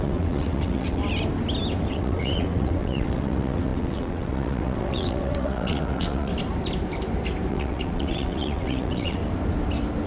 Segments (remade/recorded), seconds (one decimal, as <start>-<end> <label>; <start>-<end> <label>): 0.0-1.0 remade; 1.0-1.9 recorded; 1.9-6.3 remade; 6.3-7.5 recorded; 7.5-9.2 remade; 9.2-10.1 recorded